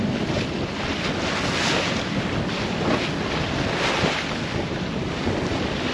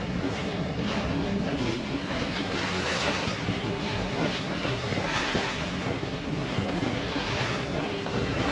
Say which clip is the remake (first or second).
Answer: second